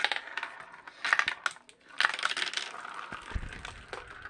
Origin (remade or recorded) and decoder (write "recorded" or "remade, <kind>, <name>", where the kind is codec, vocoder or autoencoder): recorded